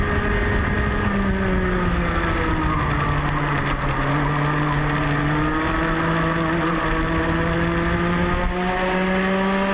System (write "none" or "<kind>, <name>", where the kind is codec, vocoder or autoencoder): none